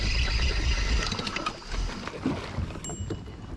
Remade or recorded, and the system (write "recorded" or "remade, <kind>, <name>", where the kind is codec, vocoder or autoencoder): recorded